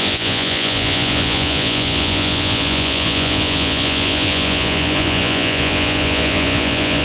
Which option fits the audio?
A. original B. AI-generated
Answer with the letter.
B